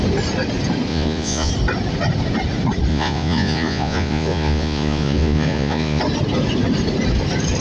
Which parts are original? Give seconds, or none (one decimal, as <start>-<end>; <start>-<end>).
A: 0.0-0.9; 1.5-2.9; 6.0-7.6